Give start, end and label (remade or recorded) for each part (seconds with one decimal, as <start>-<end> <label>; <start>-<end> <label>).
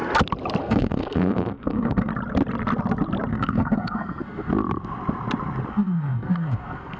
0.0-0.6 recorded; 0.6-2.1 remade; 2.1-3.3 recorded; 3.3-4.5 remade; 4.5-5.7 recorded; 5.7-7.0 remade